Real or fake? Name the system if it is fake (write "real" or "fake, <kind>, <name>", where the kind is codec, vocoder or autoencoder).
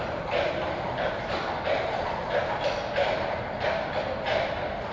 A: real